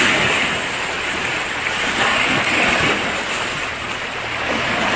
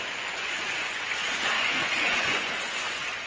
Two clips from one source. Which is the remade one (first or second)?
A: second